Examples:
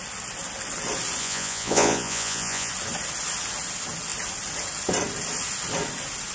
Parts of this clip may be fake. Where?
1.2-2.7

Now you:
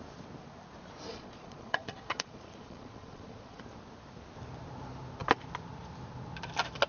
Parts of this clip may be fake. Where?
1.1-3.6

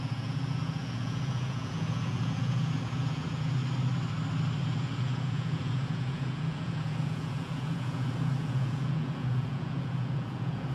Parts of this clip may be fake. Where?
0.0-3.6; 4.6-10.7

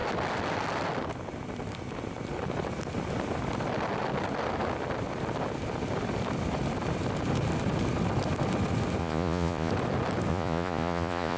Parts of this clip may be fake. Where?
9.0-9.7; 10.3-11.4

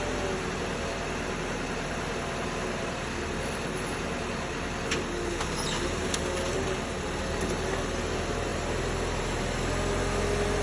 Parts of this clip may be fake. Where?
none

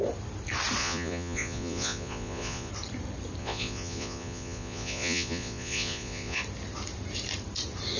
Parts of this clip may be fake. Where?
0.8-2.7; 3.4-6.4

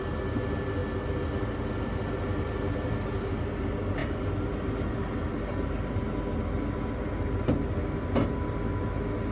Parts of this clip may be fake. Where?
none